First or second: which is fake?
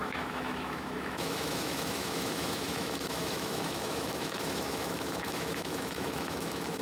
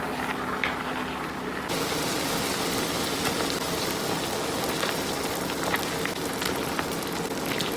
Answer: first